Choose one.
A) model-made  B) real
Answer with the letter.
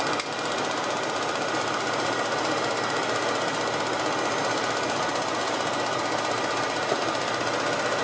B